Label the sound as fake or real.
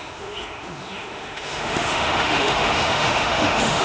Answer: fake